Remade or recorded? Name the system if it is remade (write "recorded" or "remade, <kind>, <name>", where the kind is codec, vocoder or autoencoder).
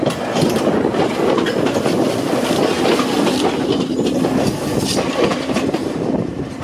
recorded